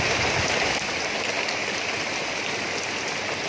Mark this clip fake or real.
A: real